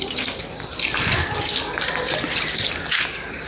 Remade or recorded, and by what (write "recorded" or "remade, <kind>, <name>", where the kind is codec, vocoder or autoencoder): recorded